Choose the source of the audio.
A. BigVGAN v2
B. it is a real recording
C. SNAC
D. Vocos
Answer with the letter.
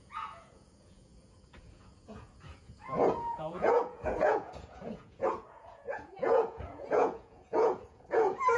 D